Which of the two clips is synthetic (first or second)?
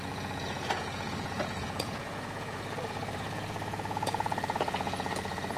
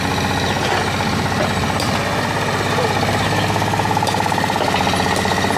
first